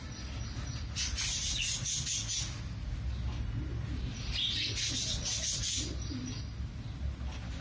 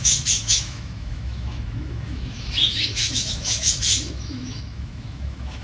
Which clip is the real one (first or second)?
first